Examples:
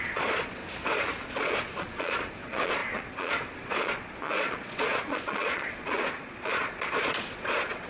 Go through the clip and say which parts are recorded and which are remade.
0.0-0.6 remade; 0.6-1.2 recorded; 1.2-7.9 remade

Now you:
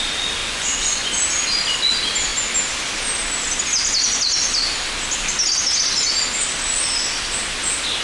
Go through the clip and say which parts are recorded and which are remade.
0.0-0.4 recorded; 0.4-1.1 remade; 1.1-8.0 recorded

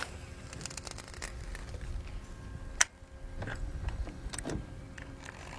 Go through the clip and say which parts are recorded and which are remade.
0.0-3.5 recorded; 3.5-4.3 remade; 4.3-5.6 recorded

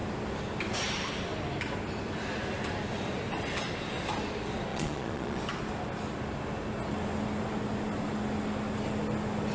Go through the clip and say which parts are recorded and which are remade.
0.0-4.7 recorded; 4.7-5.4 remade; 5.4-9.5 recorded

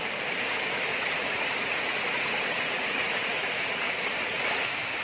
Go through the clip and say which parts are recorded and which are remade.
0.0-0.9 recorded; 0.9-3.9 remade; 3.9-5.0 recorded

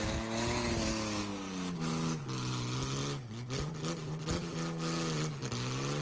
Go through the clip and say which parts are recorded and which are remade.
0.0-6.0 recorded